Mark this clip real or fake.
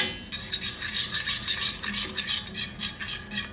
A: real